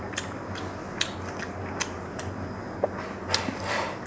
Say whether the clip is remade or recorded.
recorded